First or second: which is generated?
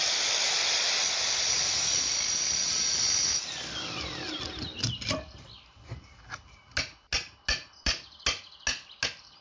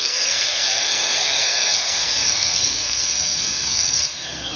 second